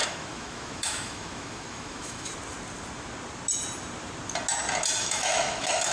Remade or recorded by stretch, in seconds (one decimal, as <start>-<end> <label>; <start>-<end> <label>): 0.0-2.3 remade; 2.3-5.0 recorded; 5.0-5.9 remade